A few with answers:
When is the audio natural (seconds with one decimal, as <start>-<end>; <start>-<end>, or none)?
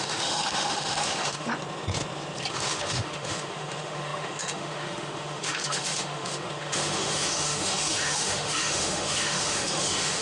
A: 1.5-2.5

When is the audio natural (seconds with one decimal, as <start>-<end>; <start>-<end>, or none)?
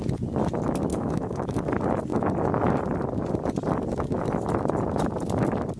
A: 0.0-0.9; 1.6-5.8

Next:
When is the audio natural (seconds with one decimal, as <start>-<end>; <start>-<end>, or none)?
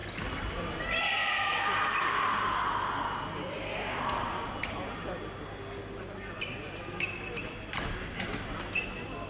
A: 0.0-9.3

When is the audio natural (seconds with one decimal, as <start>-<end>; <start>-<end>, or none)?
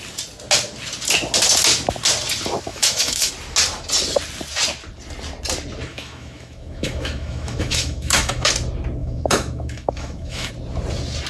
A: 0.0-2.7; 3.3-5.9; 8.5-9.0; 10.5-11.3